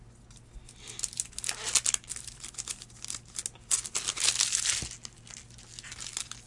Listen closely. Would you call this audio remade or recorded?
recorded